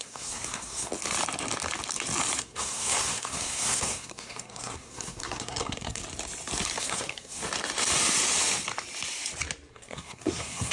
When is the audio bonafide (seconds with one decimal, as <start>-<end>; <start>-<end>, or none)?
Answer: 0.9-2.4; 6.0-6.8; 7.4-9.7